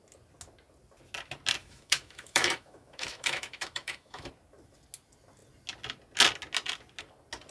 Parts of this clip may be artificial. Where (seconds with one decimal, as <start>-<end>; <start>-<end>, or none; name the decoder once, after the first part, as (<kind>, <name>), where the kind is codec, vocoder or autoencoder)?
1.6-4.3 (autoencoder, DAC-VAE)

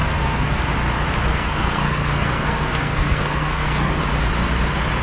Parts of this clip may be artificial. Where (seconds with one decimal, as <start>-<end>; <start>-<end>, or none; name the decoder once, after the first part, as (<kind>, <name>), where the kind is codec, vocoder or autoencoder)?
0.0-0.6 (codec, SNAC); 1.3-4.0

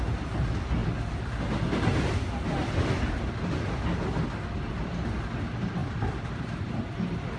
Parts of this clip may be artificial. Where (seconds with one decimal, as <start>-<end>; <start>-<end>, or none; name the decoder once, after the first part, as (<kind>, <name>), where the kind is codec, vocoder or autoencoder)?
5.8-6.6 (vocoder, BigVGAN v2)